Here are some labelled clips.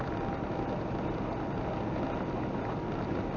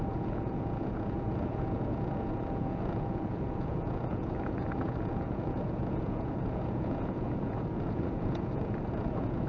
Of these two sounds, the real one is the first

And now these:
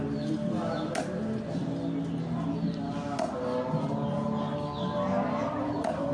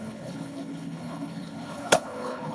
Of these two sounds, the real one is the first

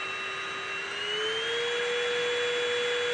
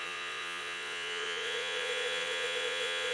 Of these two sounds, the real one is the first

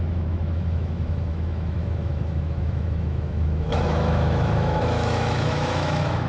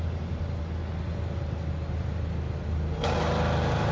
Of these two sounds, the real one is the second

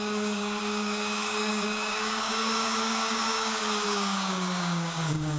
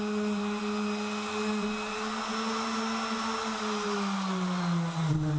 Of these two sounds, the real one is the second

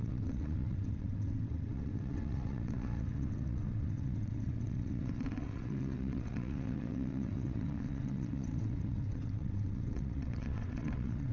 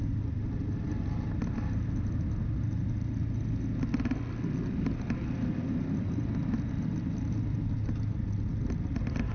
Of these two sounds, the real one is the second